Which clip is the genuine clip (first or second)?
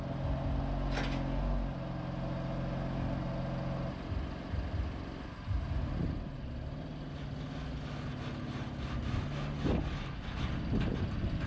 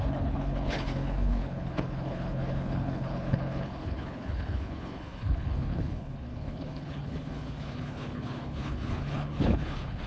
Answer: first